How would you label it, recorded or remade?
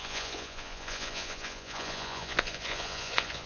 remade